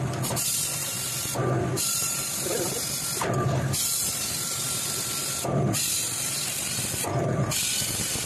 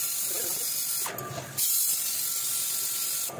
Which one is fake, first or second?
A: first